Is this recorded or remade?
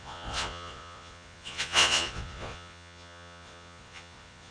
remade